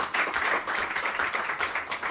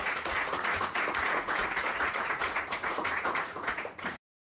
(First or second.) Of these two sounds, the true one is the first